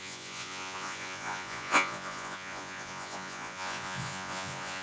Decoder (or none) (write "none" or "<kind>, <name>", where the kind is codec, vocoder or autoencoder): vocoder, Vocos